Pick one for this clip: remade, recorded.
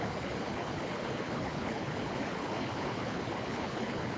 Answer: remade